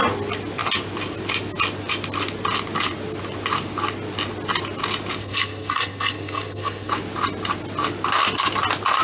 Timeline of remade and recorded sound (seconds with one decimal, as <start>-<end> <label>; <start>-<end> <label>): 0.0-5.2 recorded; 5.2-6.9 remade; 6.9-9.0 recorded